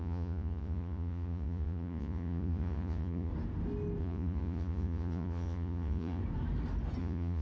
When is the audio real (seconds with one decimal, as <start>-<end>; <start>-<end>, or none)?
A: 3.3-4.0; 6.2-7.0